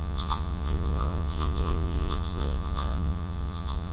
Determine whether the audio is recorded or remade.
remade